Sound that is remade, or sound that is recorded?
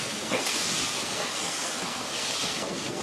remade